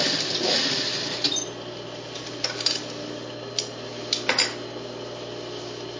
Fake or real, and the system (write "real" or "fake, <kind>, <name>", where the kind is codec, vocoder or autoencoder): real